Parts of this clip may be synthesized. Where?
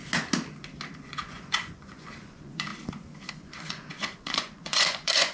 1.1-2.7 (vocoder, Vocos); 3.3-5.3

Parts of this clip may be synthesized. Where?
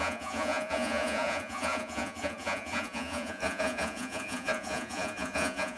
0.0-5.8 (vocoder, Vocos)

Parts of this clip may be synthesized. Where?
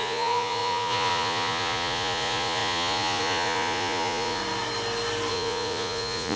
0.0-4.4 (vocoder, Vocos); 5.3-6.4